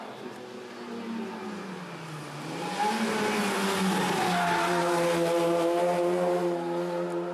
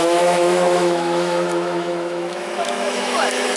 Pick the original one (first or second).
first